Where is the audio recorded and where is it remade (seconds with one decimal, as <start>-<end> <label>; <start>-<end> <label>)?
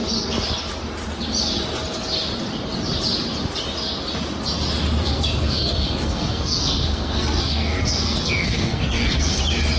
0.0-5.0 recorded; 5.0-9.4 remade; 9.4-9.8 recorded